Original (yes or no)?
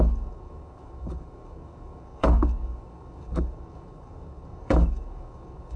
no